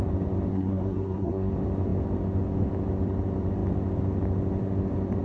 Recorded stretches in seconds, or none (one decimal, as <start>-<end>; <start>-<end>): 0.0-0.5; 1.5-5.2